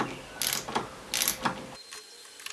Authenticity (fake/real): real